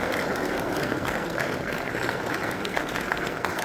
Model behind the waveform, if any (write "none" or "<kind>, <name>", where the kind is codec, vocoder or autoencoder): codec, SNAC